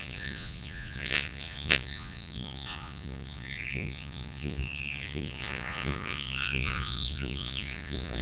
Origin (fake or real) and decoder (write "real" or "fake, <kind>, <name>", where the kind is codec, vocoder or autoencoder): fake, vocoder, Vocos